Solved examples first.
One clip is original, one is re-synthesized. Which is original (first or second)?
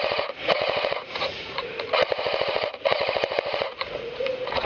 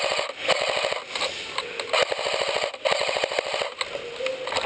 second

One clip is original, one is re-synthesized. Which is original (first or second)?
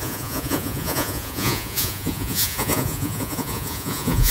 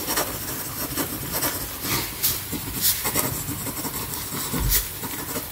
second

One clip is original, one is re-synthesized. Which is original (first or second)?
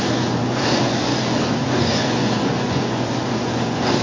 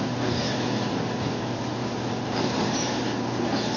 second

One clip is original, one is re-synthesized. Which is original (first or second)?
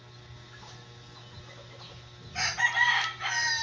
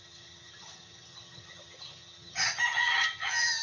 first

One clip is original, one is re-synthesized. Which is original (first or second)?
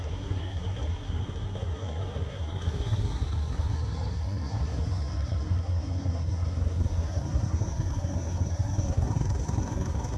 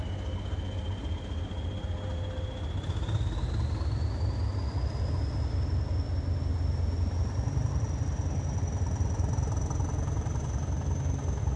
second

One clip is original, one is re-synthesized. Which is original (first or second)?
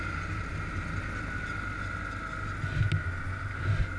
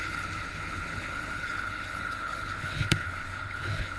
first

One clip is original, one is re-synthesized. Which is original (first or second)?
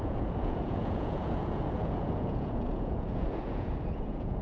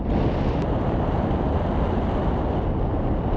second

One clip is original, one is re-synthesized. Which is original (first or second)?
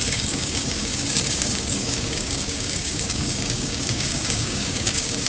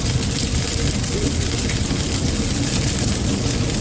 second